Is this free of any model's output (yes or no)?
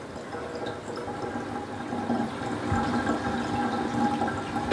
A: yes